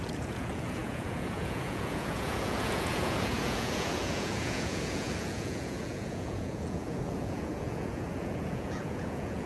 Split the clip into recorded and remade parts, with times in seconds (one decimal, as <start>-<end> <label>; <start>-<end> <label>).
0.0-9.5 remade

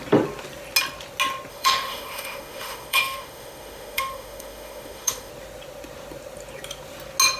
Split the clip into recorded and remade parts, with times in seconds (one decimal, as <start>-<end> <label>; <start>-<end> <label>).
0.0-1.5 recorded; 1.5-5.3 remade; 5.3-7.4 recorded

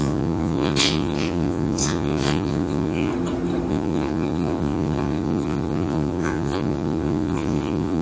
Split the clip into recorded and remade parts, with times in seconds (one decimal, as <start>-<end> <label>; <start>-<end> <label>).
0.0-3.1 remade; 3.1-3.7 recorded; 3.7-8.0 remade

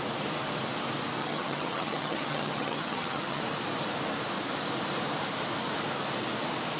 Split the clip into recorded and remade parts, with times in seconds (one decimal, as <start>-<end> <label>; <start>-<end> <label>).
0.0-1.2 recorded; 1.2-3.4 remade; 3.4-6.8 recorded

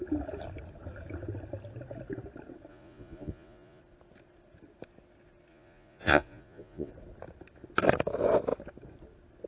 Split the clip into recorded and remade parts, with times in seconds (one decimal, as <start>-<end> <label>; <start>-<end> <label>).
0.0-2.7 recorded; 2.7-3.8 remade; 3.8-5.5 recorded; 5.5-6.9 remade; 6.9-9.5 recorded

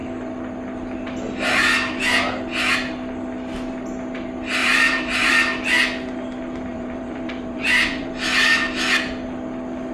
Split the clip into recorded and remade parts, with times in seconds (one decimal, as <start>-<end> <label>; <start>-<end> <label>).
0.0-4.6 recorded; 4.6-5.3 remade; 5.3-6.7 recorded; 6.7-8.1 remade; 8.1-9.9 recorded